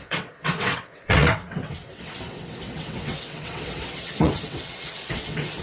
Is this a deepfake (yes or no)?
yes